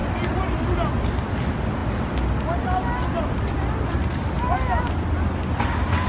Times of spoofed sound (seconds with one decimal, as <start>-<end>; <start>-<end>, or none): none